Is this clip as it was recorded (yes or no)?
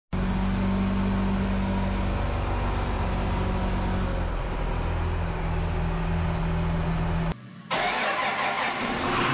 yes